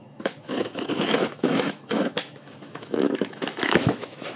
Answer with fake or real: fake